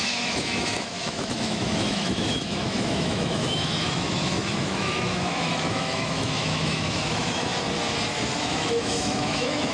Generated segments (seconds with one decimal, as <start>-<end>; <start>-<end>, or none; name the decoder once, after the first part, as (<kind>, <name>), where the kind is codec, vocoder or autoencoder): 0.0-7.5 (autoencoder, DAC-VAE); 8.4-9.7